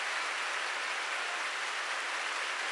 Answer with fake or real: real